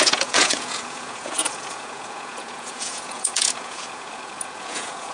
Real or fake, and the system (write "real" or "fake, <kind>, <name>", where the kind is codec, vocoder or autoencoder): fake, vocoder, Vocos